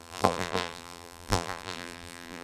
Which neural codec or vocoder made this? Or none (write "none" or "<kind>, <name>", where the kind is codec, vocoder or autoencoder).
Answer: vocoder, BigVGAN v2